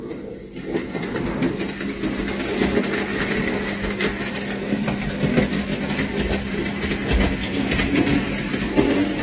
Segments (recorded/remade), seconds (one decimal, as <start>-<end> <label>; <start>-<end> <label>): 0.0-7.0 recorded; 7.0-8.2 remade; 8.2-9.2 recorded